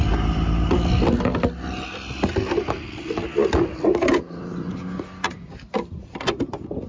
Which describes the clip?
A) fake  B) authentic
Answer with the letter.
B